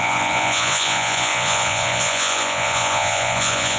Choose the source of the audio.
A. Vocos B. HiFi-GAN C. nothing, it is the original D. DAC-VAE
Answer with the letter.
A